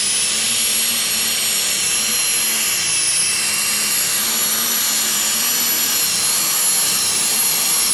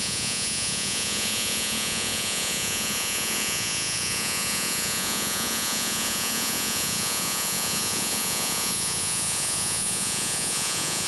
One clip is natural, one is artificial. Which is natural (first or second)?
first